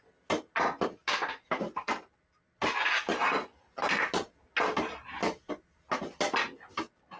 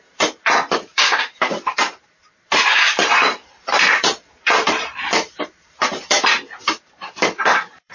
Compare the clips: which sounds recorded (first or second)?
first